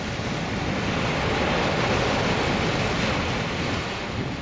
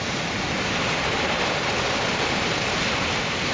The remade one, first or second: second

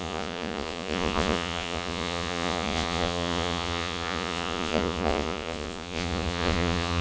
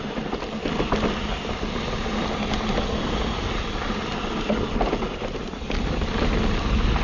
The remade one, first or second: first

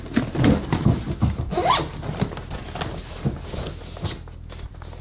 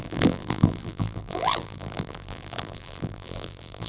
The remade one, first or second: second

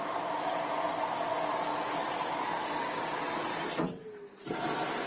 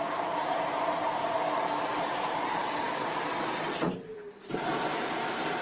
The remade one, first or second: second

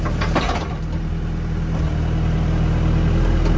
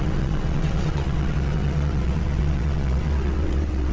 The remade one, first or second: second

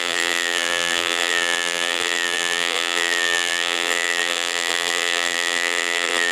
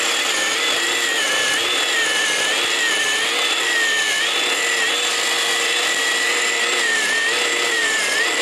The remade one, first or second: first